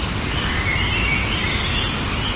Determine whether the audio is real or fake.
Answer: real